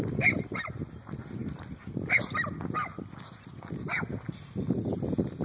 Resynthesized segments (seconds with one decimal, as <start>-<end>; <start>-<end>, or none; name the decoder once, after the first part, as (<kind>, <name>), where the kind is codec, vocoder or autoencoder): none